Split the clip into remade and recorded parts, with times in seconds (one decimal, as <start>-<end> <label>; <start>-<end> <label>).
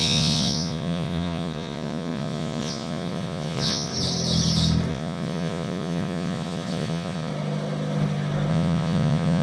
0.0-3.9 remade; 3.9-4.9 recorded; 4.9-7.3 remade; 7.3-8.5 recorded; 8.5-9.4 remade